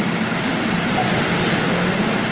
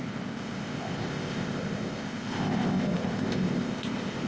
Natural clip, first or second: first